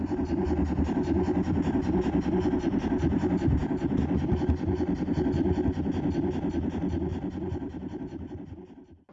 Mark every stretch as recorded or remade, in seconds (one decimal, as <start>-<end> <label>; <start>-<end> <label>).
0.0-7.1 recorded; 7.1-8.3 remade; 8.3-9.1 recorded